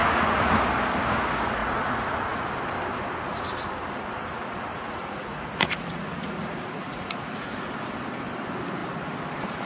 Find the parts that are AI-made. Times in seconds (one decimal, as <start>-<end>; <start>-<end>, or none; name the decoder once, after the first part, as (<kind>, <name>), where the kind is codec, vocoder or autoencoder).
0.0-0.5 (vocoder, Vocos); 1.6-2.5; 4.7-7.7